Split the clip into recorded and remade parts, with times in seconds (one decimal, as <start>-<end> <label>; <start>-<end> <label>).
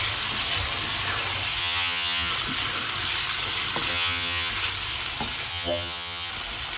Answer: 0.0-1.6 recorded; 1.6-2.3 remade; 2.3-3.9 recorded; 3.9-4.5 remade; 4.5-5.5 recorded; 5.5-6.3 remade; 6.3-6.8 recorded